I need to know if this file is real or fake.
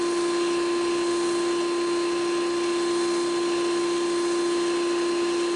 real